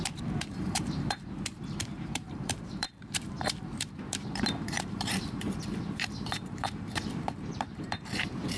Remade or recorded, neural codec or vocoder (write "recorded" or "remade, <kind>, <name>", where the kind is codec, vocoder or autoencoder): remade, vocoder, BigVGAN v2